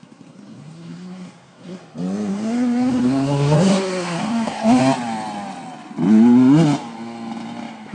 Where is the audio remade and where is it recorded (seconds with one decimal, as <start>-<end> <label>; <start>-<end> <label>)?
0.0-1.8 remade; 1.8-2.3 recorded; 2.3-4.8 remade; 4.8-7.9 recorded